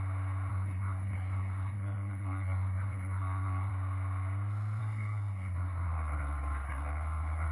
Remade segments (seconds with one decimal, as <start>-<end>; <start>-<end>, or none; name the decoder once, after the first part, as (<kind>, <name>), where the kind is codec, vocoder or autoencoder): 0.5-3.7 (codec, SNAC); 4.8-7.5